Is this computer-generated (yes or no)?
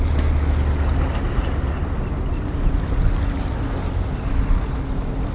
no